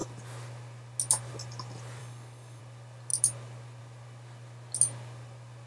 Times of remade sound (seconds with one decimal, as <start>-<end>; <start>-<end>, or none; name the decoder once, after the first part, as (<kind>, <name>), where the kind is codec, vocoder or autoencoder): 2.0-2.6 (codec, DAC)